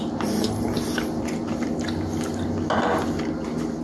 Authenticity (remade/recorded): recorded